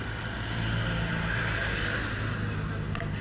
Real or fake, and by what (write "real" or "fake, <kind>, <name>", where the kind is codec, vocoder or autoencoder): real